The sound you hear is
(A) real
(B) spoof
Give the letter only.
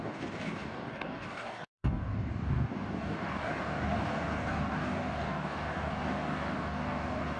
B